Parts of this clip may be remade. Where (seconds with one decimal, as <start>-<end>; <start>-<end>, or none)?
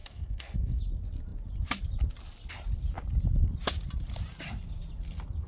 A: 0.0-0.8